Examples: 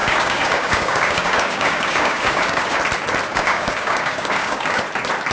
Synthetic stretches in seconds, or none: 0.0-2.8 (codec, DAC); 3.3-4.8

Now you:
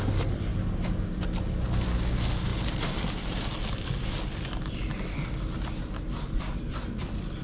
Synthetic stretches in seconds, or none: none

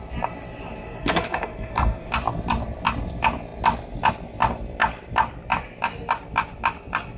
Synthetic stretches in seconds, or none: 1.0-2.1 (codec, SNAC)

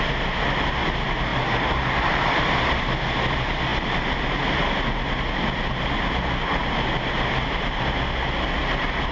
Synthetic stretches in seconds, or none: 1.3-2.9 (vocoder, BigVGAN v2)

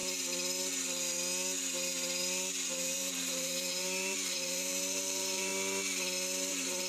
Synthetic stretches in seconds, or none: 2.7-5.5 (vocoder, BigVGAN v2); 6.5-6.9

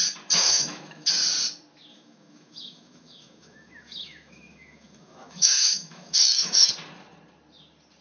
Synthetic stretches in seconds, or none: 0.4-1.1 (autoencoder, DAC-VAE); 1.9-6.7

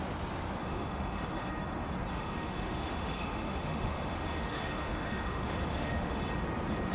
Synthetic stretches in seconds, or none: 0.6-1.5 (autoencoder, DAC-VAE); 2.1-6.2